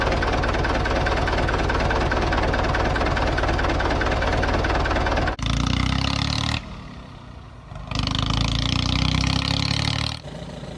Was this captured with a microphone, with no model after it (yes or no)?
yes